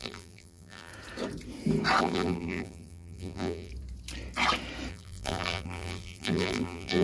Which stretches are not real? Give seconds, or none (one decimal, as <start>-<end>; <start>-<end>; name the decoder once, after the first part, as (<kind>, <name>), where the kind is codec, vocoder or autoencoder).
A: 0.0-0.9 (vocoder, BigVGAN v2); 2.0-3.7; 4.9-7.0